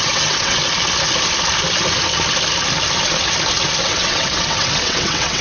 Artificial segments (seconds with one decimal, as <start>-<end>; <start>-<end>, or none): 0.0-0.6; 3.8-5.4